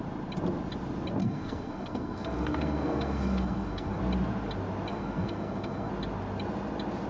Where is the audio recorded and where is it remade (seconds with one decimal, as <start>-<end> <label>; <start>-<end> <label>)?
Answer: 0.0-1.2 recorded; 1.2-4.0 remade; 4.0-4.9 recorded; 4.9-5.9 remade; 5.9-7.1 recorded